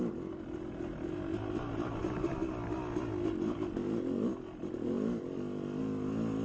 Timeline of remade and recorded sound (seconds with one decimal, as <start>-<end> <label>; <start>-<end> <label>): 0.0-6.4 recorded